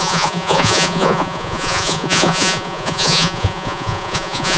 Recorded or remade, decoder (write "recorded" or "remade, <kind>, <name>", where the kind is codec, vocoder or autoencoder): remade, vocoder, Vocos